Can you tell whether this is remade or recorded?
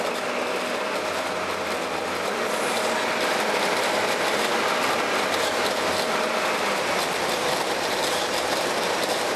remade